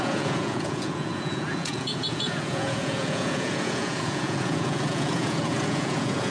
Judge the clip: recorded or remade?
remade